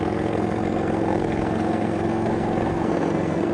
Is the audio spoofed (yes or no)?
yes